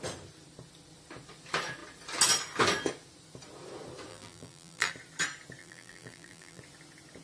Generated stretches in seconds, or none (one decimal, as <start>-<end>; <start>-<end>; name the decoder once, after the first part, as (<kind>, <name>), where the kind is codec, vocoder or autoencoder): 4.1-4.9 (vocoder, BigVGAN v2); 5.6-6.6